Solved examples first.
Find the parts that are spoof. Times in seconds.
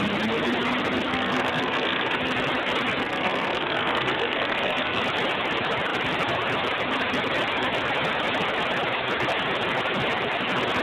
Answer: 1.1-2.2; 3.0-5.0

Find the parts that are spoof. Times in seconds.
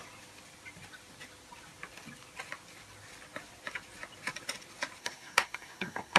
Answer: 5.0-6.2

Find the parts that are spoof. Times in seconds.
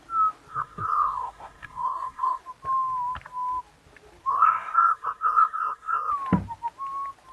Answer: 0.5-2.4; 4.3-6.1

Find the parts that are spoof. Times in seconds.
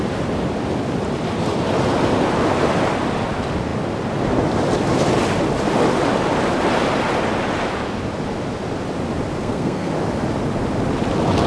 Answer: 9.4-9.9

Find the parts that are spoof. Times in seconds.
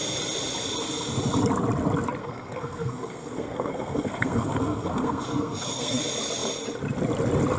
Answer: 2.2-6.0